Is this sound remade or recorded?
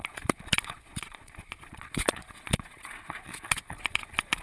remade